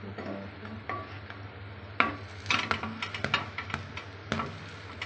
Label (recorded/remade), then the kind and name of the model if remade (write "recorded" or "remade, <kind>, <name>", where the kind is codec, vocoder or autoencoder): recorded